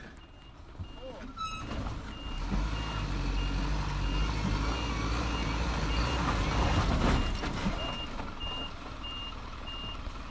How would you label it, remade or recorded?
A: recorded